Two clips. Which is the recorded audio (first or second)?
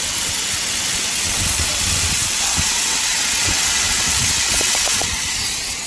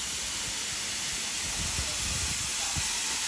second